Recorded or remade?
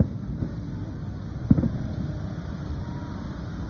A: recorded